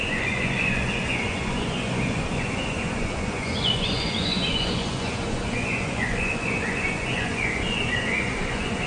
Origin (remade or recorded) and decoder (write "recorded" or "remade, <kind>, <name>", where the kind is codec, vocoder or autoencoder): remade, vocoder, Vocos